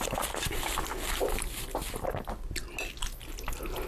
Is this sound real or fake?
real